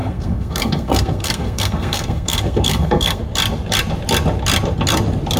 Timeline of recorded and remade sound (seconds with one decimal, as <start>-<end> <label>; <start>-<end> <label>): 0.0-3.2 remade; 3.2-5.4 recorded